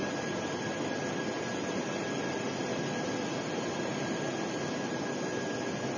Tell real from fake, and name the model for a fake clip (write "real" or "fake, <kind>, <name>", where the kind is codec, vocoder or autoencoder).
real